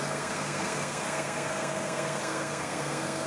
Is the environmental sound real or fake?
fake